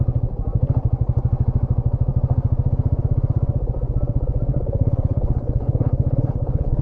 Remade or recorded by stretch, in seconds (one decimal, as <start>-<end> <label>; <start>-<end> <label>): 0.0-4.5 recorded; 4.5-6.8 remade